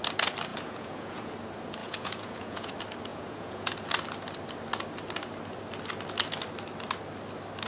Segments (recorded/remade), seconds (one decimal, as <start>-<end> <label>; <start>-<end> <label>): 0.0-0.5 recorded; 0.5-1.3 remade; 1.3-1.8 recorded; 1.8-2.7 remade; 2.7-3.1 recorded; 3.1-3.7 remade; 3.7-7.7 recorded